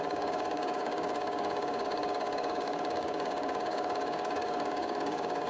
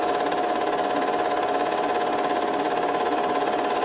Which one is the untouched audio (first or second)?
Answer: second